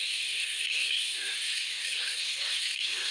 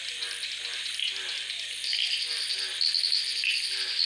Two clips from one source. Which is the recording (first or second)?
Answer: second